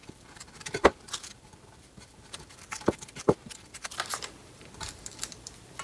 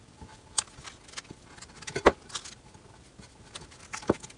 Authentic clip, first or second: second